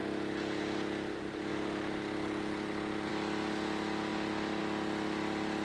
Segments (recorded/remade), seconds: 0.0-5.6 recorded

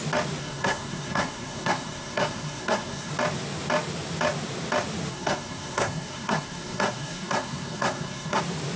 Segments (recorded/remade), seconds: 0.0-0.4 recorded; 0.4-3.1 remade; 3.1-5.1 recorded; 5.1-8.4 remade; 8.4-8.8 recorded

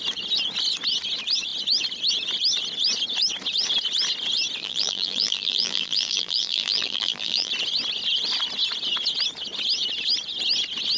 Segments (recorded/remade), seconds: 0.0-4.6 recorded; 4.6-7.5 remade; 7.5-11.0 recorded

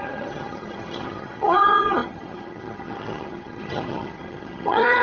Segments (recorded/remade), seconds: 0.0-5.0 remade

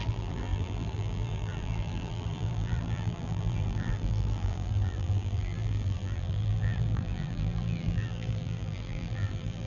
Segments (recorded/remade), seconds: 0.0-9.7 remade